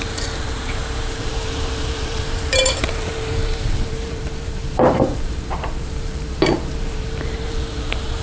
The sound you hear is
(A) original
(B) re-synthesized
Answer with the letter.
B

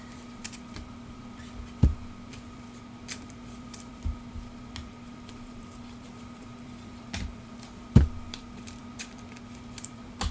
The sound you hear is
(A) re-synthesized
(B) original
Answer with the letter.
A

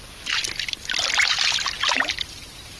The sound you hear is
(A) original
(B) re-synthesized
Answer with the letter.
A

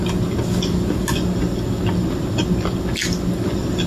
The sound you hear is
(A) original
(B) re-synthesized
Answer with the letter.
A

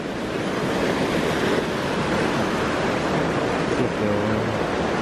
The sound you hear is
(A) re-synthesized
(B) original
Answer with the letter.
B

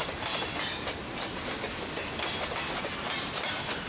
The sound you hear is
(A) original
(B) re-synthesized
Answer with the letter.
B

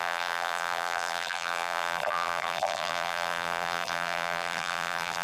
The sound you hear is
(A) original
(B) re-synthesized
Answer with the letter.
B